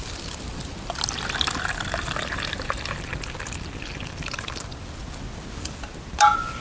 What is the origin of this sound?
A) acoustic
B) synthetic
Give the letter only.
A